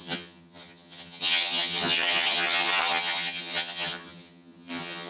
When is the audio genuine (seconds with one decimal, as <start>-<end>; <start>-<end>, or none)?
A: none